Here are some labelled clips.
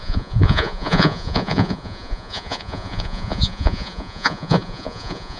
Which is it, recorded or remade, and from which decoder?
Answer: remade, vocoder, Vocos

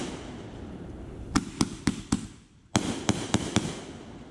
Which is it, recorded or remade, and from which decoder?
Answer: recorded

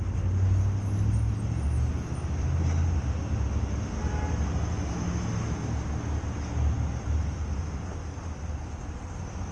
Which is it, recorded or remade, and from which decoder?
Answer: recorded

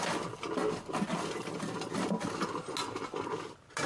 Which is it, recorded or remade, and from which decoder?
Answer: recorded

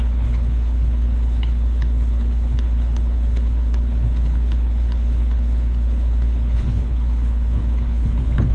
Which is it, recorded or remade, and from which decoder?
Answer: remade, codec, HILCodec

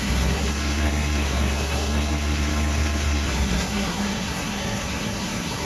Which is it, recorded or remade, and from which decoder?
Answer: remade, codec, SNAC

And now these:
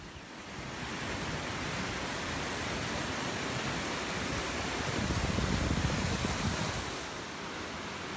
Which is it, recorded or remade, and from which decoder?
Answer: recorded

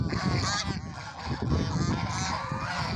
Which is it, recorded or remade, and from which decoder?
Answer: recorded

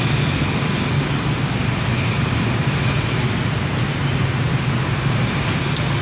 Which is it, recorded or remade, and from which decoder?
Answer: recorded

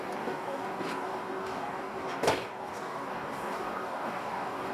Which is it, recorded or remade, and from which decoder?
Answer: remade, codec, DAC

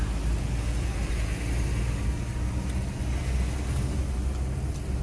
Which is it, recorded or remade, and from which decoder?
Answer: recorded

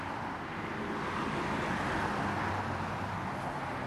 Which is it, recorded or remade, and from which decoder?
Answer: recorded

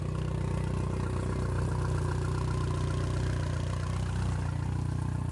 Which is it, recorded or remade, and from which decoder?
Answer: recorded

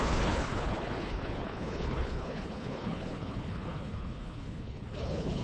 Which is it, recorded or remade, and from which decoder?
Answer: remade, codec, HILCodec